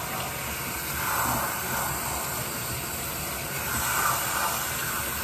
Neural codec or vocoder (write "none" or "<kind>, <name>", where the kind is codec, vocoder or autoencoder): none